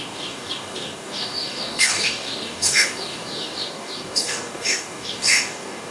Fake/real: fake